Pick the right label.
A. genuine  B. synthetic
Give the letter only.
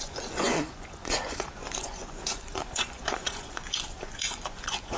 B